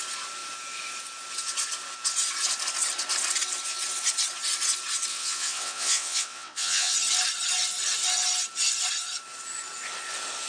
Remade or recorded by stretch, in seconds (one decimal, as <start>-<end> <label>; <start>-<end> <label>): 0.0-5.1 recorded; 5.1-6.9 remade; 6.9-10.5 recorded